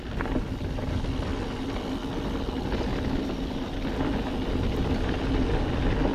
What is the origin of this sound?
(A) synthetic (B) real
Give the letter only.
B